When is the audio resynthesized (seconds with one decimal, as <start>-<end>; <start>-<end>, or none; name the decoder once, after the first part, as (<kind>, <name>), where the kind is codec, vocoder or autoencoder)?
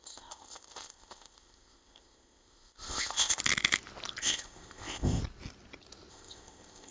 0.0-3.4 (codec, ZipCodec); 4.2-5.2; 6.1-6.9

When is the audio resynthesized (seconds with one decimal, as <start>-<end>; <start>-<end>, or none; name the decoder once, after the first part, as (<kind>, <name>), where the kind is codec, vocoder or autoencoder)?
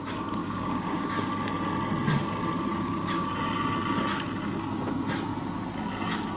0.4-1.3 (codec, DAC); 2.7-3.3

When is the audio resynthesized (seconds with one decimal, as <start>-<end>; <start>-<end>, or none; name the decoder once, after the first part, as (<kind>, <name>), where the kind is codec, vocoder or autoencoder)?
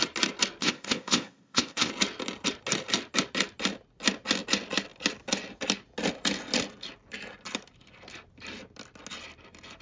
0.6-1.9 (codec, ZipCodec)